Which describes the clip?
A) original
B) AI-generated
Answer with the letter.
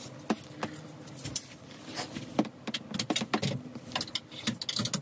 A